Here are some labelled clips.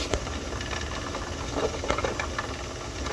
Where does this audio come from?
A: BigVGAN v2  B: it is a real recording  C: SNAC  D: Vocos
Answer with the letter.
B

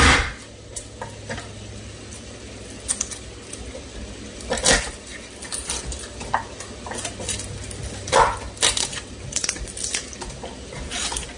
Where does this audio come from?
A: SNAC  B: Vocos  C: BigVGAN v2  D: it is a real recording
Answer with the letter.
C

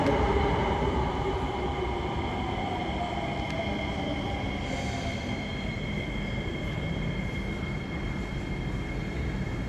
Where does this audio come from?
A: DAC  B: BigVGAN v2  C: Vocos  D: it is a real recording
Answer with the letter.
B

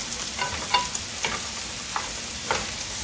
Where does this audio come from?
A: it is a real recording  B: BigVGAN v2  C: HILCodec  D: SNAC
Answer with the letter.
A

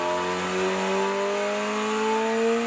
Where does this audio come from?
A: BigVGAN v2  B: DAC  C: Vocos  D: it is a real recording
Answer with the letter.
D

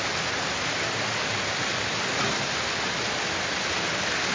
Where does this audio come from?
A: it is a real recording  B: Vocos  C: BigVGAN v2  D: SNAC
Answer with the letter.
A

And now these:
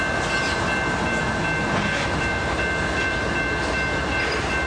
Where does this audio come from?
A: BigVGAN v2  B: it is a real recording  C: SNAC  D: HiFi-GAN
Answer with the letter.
B